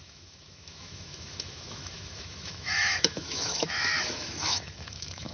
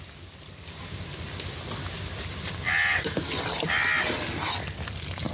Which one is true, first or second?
second